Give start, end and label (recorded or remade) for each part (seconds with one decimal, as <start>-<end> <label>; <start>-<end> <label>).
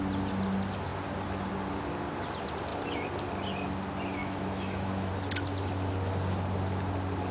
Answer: 0.0-4.2 recorded; 4.2-5.1 remade; 5.1-7.3 recorded